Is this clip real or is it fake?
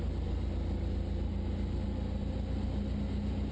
real